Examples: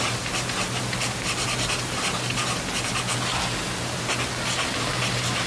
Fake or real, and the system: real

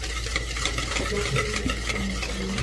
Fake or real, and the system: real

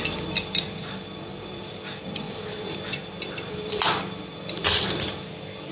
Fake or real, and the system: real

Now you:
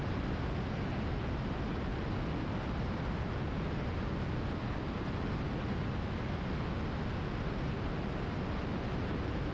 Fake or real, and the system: real